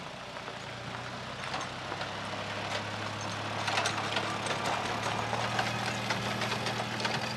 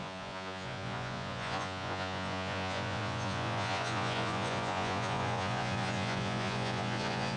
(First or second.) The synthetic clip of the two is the second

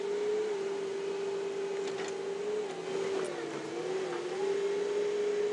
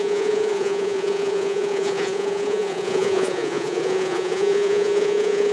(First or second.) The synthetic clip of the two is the second